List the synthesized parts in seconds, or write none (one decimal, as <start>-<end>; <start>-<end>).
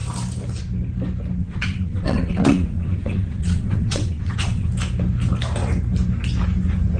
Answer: 1.4-4.7